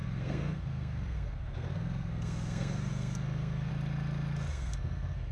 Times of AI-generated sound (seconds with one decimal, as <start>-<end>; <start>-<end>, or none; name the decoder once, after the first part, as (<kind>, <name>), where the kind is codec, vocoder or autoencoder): 0.0-3.7 (codec, SNAC); 4.5-5.3